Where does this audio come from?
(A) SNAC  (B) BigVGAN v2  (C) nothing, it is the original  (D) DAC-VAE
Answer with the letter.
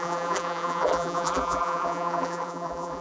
B